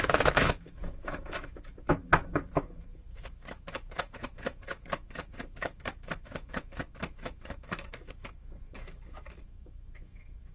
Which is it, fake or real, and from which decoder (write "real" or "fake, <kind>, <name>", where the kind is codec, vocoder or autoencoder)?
fake, autoencoder, DAC-VAE